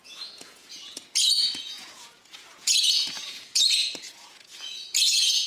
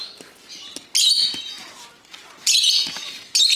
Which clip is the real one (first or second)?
second